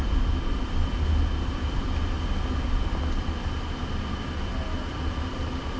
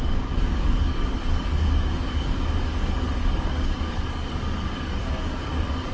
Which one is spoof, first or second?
second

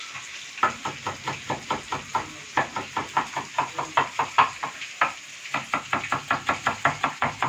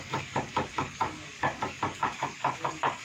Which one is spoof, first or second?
second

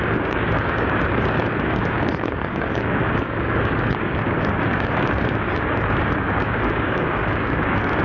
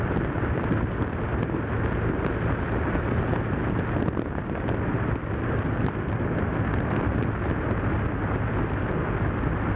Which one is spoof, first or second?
first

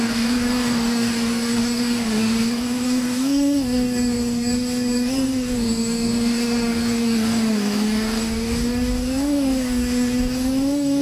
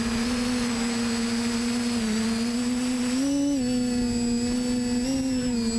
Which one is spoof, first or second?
first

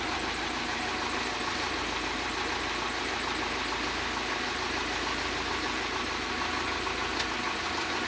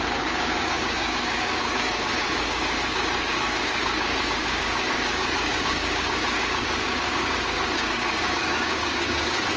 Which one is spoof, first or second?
second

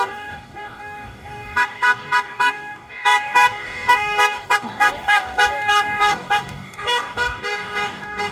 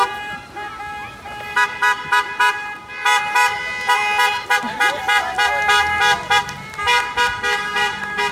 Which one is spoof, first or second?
first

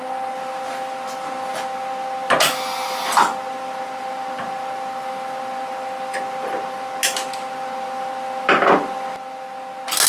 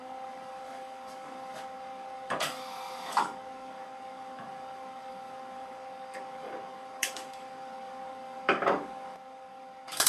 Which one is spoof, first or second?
second